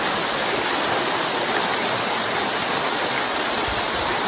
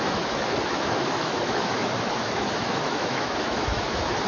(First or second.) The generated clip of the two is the second